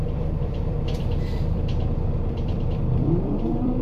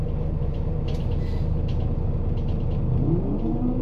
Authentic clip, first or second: second